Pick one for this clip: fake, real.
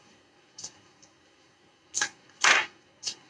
fake